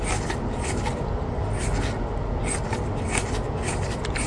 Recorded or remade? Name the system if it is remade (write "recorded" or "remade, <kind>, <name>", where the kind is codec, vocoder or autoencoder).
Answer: recorded